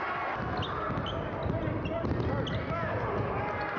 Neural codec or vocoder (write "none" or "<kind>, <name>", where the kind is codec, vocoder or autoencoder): none